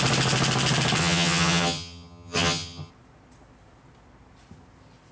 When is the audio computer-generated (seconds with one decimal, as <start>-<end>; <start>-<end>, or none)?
1.0-2.9